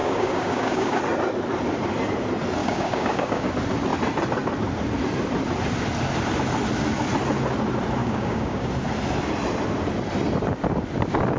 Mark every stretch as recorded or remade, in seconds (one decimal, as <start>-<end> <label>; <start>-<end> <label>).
0.0-1.0 remade; 1.0-2.6 recorded; 2.6-3.5 remade; 3.5-8.0 recorded; 8.0-8.7 remade; 8.7-11.4 recorded